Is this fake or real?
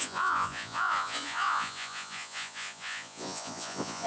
fake